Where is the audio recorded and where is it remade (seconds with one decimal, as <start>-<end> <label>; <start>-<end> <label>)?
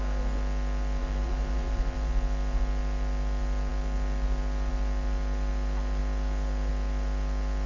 0.0-1.0 recorded; 1.0-2.1 remade; 2.1-7.7 recorded